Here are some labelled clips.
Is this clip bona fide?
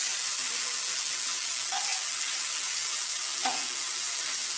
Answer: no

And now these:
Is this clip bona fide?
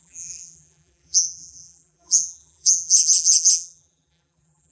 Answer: no